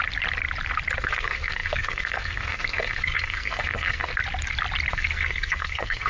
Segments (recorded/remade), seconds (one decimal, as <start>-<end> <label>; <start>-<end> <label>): 0.0-1.0 recorded; 1.0-4.1 remade; 4.1-4.9 recorded; 4.9-6.1 remade